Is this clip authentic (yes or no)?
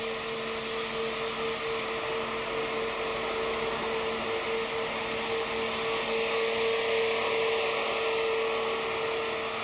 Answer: yes